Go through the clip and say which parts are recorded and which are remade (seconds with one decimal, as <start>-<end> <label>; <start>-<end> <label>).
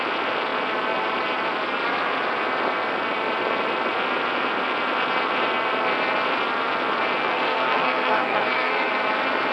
0.0-7.2 recorded; 7.2-8.9 remade; 8.9-9.5 recorded